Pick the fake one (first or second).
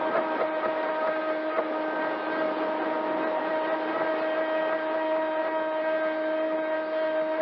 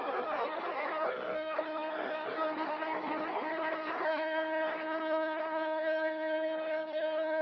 second